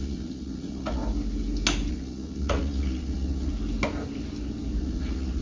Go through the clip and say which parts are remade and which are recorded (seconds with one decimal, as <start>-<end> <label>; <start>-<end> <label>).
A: 0.0-1.0 remade; 1.0-1.9 recorded; 1.9-3.5 remade; 3.5-4.8 recorded; 4.8-5.4 remade